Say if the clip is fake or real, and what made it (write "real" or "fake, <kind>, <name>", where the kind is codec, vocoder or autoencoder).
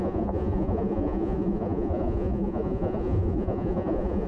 fake, vocoder, Vocos